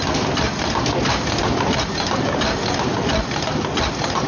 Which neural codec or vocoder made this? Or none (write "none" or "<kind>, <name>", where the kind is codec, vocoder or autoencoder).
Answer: none